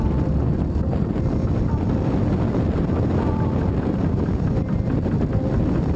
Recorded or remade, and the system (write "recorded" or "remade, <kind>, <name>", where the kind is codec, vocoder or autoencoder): recorded